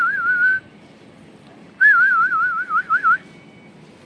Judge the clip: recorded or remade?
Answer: recorded